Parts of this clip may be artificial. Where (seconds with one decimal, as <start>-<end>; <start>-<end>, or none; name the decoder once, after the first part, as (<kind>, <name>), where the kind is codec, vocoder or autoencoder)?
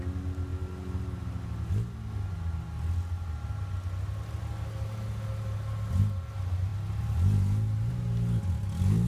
none